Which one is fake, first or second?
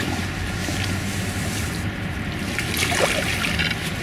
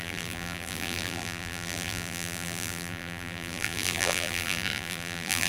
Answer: second